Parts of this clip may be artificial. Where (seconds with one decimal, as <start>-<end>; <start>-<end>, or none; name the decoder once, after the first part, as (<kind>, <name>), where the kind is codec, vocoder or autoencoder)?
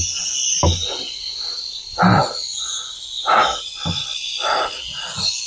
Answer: none